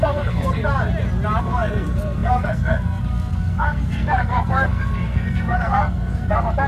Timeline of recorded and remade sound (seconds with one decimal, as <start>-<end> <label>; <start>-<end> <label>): 0.0-0.6 remade; 0.6-1.4 recorded; 1.4-6.7 remade